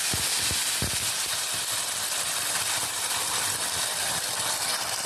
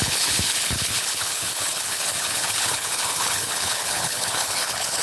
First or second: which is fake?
second